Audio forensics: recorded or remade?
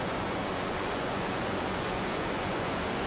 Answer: remade